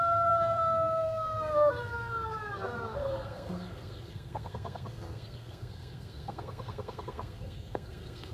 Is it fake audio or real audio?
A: fake